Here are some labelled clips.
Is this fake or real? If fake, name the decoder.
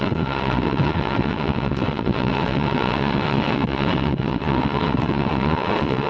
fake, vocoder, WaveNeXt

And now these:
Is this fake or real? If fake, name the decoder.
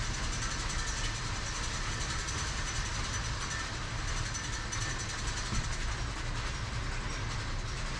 real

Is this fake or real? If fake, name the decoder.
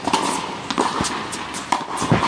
real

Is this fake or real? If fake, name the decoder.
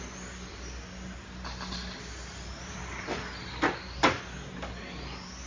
real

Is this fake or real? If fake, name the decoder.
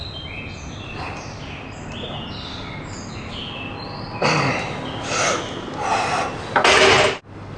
real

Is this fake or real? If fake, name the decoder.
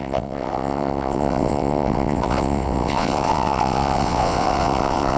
fake, vocoder, WaveNeXt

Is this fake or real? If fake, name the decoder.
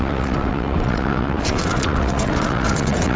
fake, vocoder, WaveNeXt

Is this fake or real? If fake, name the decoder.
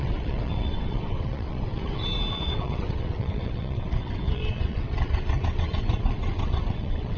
fake, vocoder, WaveNeXt